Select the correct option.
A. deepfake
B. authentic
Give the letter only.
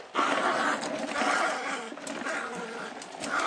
B